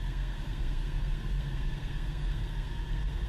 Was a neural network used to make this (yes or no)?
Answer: yes